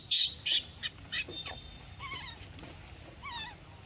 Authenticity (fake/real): real